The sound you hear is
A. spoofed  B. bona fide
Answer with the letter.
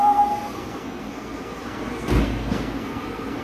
A